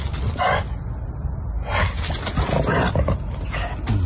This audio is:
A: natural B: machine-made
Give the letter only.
A